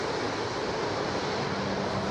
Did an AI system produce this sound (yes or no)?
no